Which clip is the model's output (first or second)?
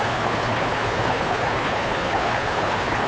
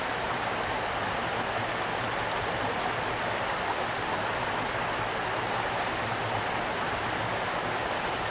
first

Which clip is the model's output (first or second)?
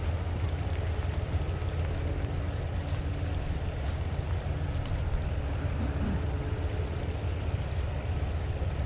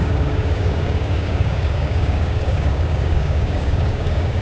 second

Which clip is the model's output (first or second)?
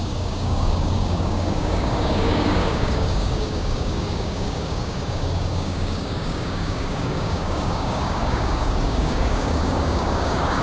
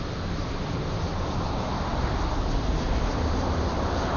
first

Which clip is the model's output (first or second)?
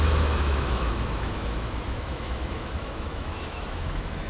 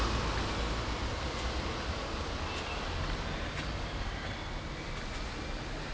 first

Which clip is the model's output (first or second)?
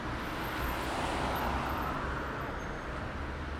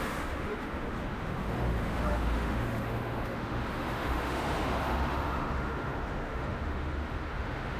second